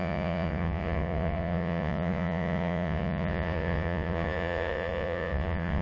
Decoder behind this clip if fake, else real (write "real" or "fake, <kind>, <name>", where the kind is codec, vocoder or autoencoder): fake, vocoder, Vocos